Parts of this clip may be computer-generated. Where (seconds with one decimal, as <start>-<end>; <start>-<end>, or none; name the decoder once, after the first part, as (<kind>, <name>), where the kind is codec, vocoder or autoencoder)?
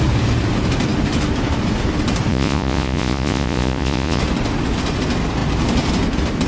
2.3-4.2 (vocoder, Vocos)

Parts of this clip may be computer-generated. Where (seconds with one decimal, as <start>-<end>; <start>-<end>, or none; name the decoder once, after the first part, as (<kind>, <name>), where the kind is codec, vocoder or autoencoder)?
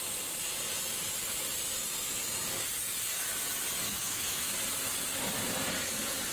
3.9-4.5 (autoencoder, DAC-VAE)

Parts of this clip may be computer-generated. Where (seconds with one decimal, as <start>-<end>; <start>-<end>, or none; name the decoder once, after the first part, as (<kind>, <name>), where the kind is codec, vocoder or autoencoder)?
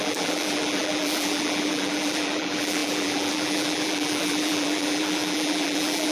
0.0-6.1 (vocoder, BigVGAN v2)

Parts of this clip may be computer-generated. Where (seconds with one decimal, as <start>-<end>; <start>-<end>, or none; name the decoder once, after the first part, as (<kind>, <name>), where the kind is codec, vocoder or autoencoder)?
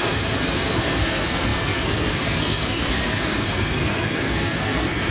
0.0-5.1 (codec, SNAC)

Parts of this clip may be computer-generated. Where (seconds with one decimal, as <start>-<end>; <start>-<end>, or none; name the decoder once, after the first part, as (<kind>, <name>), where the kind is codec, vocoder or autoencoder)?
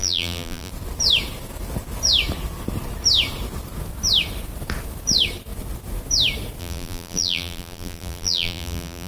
0.0-0.7 (vocoder, BigVGAN v2); 6.6-9.1